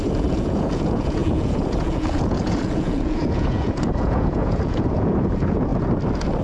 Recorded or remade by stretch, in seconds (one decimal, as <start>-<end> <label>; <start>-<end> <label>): 0.0-5.7 remade; 5.7-6.4 recorded